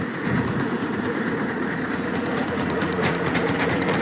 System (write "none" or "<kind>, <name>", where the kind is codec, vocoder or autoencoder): vocoder, Vocos